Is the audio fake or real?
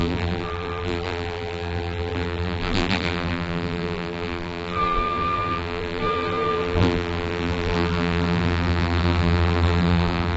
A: fake